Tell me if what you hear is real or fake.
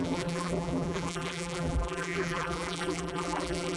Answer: fake